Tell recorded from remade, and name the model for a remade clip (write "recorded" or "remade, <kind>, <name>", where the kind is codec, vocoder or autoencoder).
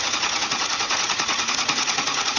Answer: remade, vocoder, Vocos